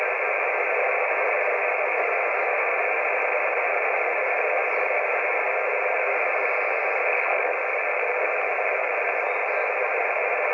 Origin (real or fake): real